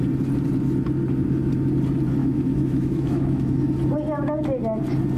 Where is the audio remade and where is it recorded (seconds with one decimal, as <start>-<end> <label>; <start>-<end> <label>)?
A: 0.0-2.2 recorded; 2.2-3.6 remade; 3.6-5.2 recorded